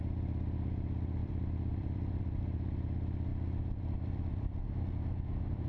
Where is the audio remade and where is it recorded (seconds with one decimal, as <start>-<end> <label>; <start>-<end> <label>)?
0.0-1.2 recorded; 1.2-2.4 remade; 2.4-3.3 recorded; 3.3-4.6 remade; 4.6-5.7 recorded